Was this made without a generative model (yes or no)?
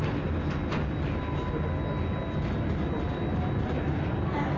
yes